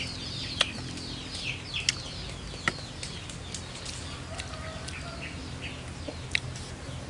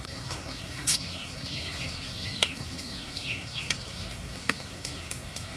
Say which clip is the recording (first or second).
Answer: first